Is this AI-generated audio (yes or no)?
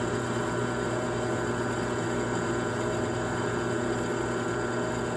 no